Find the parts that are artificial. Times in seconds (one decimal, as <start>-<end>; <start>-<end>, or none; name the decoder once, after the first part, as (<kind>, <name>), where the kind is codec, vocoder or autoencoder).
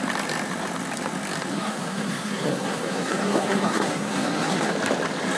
1.5-4.7 (codec, SNAC)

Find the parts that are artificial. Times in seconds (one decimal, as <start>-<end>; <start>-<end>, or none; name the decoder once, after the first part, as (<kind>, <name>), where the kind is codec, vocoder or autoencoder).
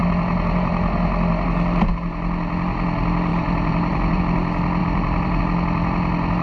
3.3-4.2 (vocoder, BigVGAN v2); 4.8-5.4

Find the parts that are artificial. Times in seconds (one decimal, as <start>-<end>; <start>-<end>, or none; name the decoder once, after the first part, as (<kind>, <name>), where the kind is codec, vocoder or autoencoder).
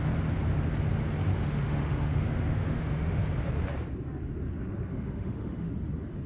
1.3-3.2 (autoencoder, DAC-VAE); 4.9-5.7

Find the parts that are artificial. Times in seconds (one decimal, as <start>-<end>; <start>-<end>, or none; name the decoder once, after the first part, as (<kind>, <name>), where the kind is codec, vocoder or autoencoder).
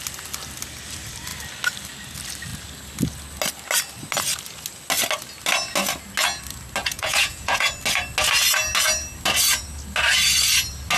6.8-7.7 (vocoder, Vocos)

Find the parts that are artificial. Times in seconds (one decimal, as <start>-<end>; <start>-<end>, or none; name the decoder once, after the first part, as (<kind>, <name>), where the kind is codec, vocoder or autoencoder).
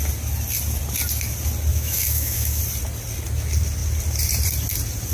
1.7-2.6 (autoencoder, DAC-VAE)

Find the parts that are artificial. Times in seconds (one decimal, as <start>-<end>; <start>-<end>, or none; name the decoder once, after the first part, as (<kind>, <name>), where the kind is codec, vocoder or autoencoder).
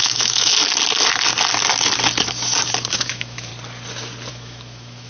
0.0-0.5 (autoencoder, DAC-VAE); 2.9-3.5; 4.3-5.1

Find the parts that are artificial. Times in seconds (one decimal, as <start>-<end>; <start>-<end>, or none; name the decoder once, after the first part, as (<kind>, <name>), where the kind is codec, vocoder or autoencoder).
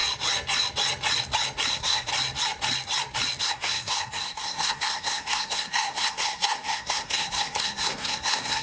1.7-2.1 (codec, SNAC); 3.4-8.6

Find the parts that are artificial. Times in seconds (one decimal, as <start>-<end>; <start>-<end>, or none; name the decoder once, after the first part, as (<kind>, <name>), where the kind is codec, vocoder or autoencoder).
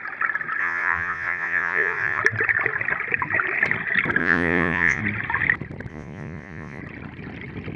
0.6-2.2 (vocoder, Vocos); 4.2-5.0; 5.9-6.8